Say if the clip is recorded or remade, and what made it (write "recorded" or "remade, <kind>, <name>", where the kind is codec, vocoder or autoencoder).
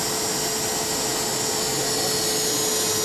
recorded